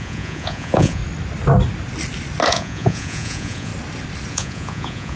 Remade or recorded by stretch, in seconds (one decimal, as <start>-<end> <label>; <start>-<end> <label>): 0.0-1.0 remade; 1.0-2.5 recorded; 2.5-3.7 remade; 3.7-4.3 recorded; 4.3-5.2 remade